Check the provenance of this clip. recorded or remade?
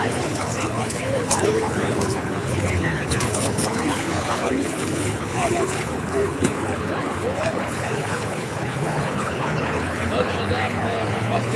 remade